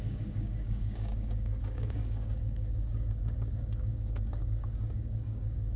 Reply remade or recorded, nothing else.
remade